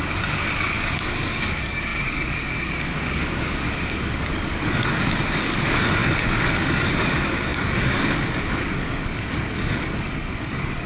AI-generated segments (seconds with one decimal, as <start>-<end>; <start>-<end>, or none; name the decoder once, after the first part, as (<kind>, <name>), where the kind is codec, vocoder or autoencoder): 0.0-10.9 (codec, DAC)